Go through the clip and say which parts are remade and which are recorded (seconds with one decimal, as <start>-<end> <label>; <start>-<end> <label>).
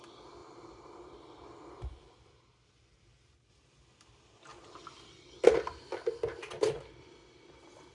0.0-0.4 recorded; 0.4-3.2 remade; 3.2-4.5 recorded; 4.5-5.9 remade; 5.9-7.9 recorded